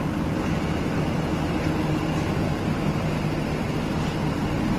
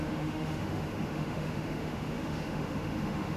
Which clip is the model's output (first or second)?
second